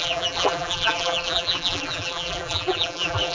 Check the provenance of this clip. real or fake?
fake